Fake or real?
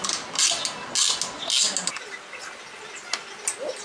real